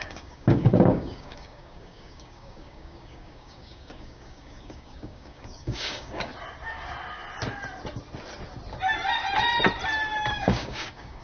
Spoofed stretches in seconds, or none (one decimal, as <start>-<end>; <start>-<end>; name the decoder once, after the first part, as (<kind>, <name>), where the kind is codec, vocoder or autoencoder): 0.0-6.3 (codec, DAC); 10.3-11.2

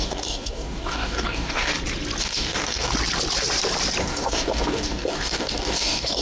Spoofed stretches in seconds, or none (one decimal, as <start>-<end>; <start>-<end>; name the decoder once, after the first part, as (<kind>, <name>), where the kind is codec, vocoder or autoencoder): 0.0-1.7 (codec, DAC); 2.2-2.9; 4.0-6.2

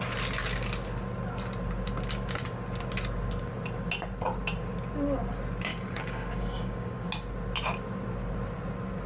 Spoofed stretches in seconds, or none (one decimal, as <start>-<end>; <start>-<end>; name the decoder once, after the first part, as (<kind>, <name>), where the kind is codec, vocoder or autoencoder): 5.7-7.1 (codec, DAC)

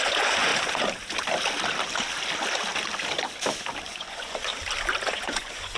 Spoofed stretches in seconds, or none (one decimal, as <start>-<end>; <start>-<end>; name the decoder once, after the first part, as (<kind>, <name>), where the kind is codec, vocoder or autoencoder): 0.0-0.5 (vocoder, Vocos); 4.0-4.5; 5.1-5.8